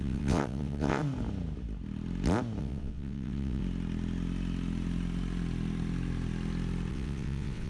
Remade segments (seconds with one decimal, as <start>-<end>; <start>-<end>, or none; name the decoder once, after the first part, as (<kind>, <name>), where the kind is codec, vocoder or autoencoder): 0.0-1.0 (vocoder, WaveNeXt); 2.6-3.6; 6.9-7.7